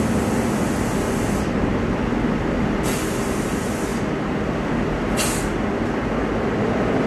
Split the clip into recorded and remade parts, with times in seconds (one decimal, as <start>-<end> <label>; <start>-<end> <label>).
0.0-7.1 recorded